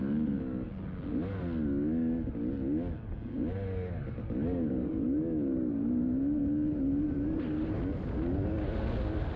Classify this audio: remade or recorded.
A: recorded